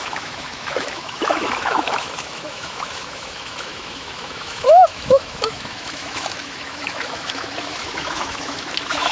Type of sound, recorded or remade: remade